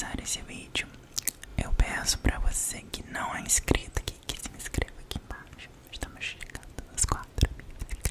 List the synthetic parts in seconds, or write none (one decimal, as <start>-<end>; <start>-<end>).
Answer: 2.6-3.4; 3.8-4.4